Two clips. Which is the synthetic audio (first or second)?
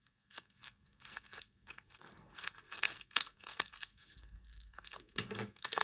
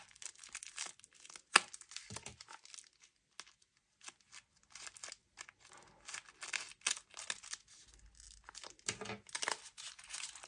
first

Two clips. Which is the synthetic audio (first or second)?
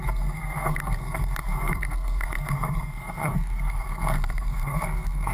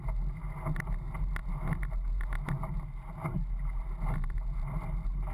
first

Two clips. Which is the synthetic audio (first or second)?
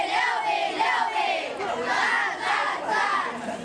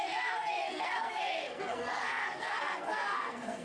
second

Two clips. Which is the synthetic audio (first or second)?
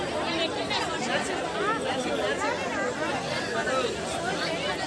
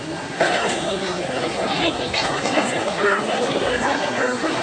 second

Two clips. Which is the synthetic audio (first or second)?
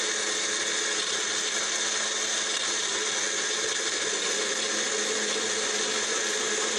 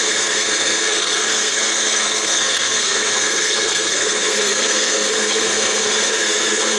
second